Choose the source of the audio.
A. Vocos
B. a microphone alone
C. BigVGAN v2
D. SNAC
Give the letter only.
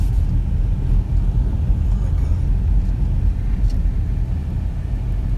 B